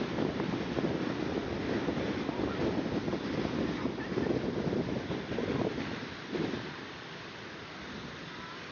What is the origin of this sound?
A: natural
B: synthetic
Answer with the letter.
A